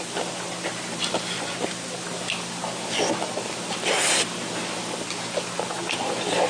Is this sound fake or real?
fake